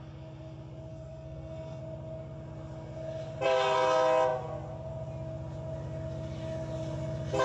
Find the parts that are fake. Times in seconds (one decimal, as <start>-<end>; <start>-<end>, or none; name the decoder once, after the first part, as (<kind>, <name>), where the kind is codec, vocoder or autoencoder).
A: 0.9-1.8 (codec, SNAC)